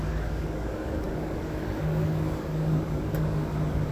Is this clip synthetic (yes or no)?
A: yes